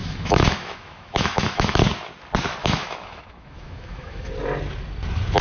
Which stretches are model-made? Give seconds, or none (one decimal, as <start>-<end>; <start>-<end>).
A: 0.0-1.8; 2.6-4.3